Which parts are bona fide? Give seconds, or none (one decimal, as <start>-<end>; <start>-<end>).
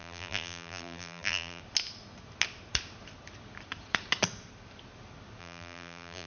1.6-5.4